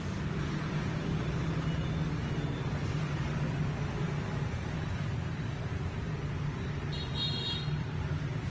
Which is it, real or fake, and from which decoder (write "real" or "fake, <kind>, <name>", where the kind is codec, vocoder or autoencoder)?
real